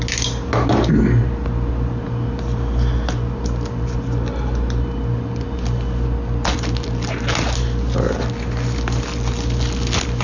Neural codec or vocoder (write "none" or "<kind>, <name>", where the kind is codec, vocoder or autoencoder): none